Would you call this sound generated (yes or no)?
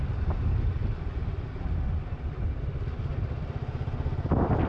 no